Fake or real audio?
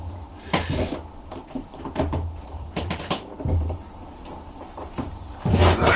fake